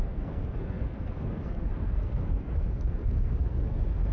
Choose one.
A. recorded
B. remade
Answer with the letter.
B